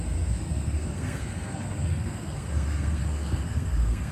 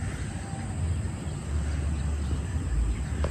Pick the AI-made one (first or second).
first